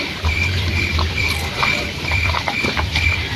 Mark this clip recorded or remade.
remade